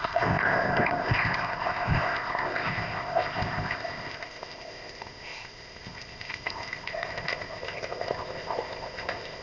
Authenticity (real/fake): fake